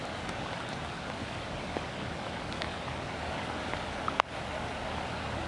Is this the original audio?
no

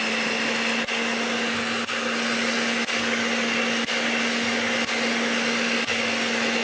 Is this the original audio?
yes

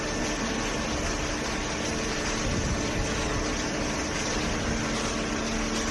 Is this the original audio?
yes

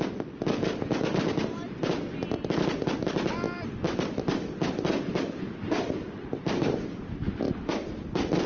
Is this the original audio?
yes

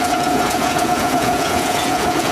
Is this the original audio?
no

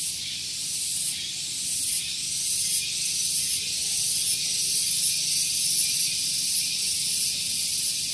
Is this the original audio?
yes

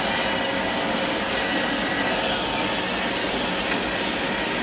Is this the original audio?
yes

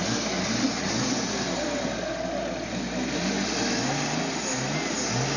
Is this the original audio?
yes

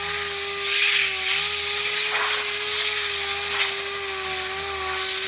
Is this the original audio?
yes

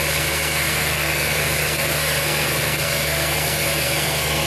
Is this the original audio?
no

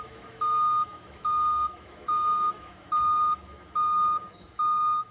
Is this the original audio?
no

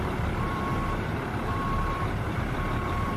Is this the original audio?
no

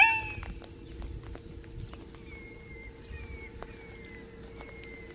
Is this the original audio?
yes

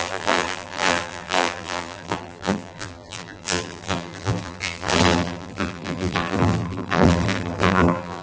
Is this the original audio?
no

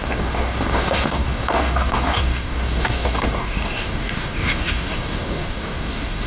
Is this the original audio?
no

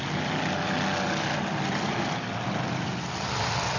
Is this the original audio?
no